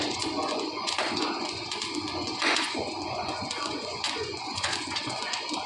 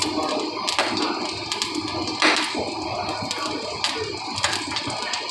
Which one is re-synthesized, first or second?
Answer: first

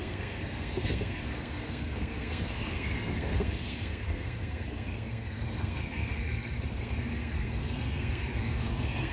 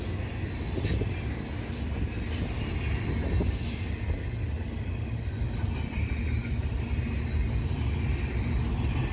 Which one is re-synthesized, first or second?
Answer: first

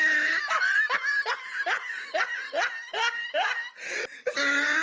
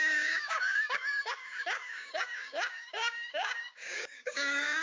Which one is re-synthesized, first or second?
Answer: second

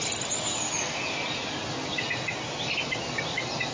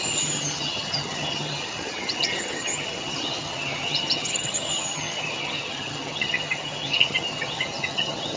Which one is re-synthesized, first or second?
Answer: second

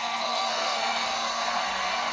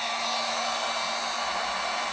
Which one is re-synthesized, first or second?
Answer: first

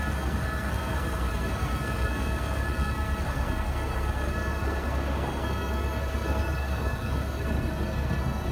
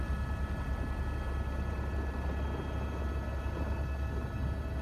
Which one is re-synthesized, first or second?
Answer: first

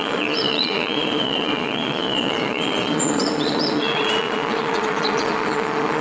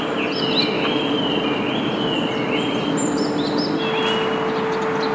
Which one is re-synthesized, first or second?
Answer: first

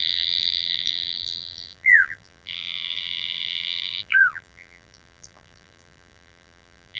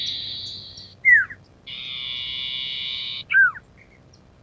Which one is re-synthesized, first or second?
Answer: first